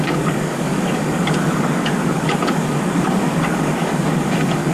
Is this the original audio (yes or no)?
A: no